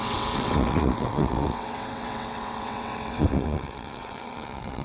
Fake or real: fake